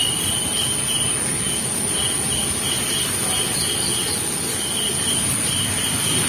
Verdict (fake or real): real